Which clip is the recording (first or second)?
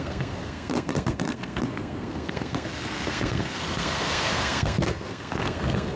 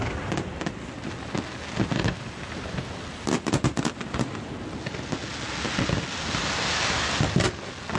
second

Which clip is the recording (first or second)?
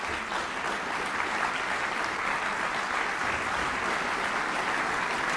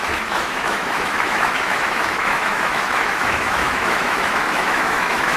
first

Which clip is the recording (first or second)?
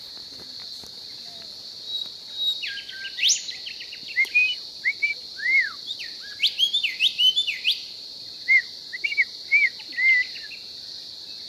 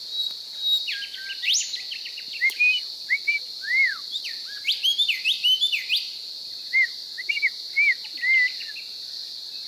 second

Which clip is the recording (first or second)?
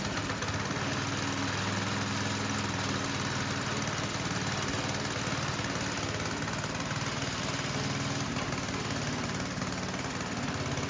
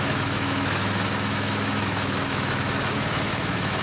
first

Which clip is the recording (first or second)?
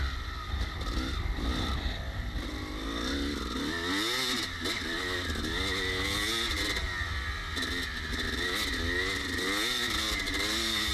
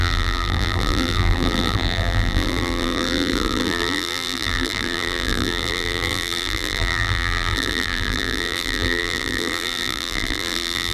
first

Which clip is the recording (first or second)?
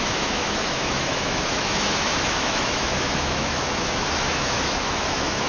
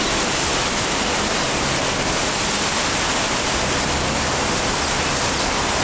second